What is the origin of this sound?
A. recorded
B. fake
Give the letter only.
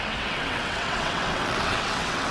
B